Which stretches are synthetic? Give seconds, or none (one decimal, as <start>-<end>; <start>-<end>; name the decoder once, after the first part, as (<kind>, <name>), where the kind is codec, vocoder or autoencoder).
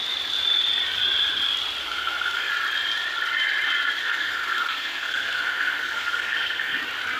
1.8-2.5 (codec, SNAC); 4.0-6.8